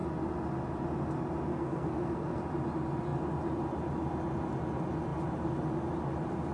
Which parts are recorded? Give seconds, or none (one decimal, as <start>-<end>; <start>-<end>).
0.0-1.5; 2.4-6.5